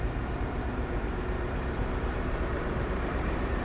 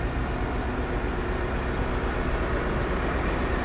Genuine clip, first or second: second